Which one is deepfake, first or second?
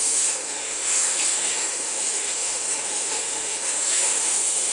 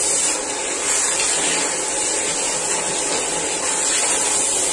first